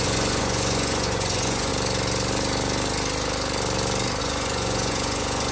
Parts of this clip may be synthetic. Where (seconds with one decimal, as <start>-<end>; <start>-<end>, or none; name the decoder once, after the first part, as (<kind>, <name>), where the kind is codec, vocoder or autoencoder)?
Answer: 0.0-1.7 (vocoder, Vocos); 4.2-5.5